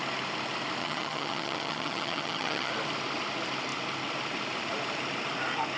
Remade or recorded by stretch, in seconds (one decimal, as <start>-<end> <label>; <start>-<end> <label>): 0.0-0.8 recorded; 0.8-2.7 remade; 2.7-5.8 recorded